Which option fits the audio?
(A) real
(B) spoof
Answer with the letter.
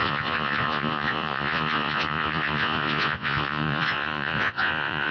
B